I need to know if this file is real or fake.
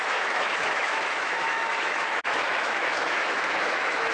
fake